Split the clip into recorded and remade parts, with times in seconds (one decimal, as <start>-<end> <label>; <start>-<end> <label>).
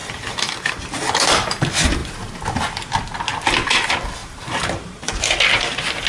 0.0-0.7 remade; 0.7-2.0 recorded; 2.0-2.9 remade; 2.9-4.2 recorded; 4.2-5.1 remade; 5.1-6.1 recorded